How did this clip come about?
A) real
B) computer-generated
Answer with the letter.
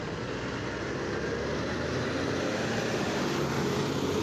A